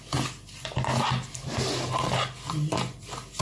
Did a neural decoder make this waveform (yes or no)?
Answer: no